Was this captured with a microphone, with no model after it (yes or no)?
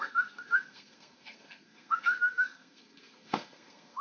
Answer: no